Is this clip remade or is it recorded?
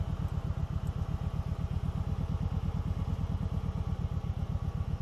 recorded